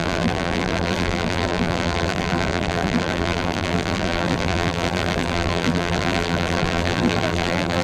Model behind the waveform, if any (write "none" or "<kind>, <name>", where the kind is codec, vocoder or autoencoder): vocoder, BigVGAN v2